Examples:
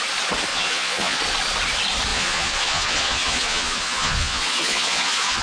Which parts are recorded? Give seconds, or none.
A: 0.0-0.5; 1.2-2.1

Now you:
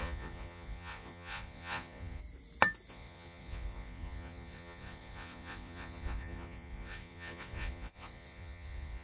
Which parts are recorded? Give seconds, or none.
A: 2.2-2.9